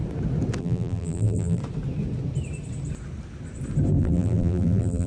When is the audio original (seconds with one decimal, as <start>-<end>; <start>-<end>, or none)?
0.0-0.6; 1.6-4.0